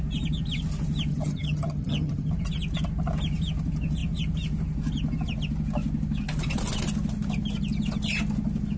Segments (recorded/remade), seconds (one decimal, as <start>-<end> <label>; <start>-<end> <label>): 0.0-1.1 recorded; 1.1-2.3 remade; 2.3-8.8 recorded